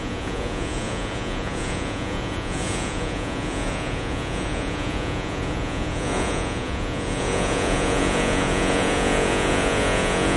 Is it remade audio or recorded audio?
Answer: remade